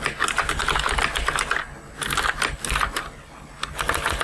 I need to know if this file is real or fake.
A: real